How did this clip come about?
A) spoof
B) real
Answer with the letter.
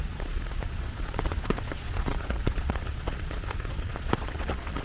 A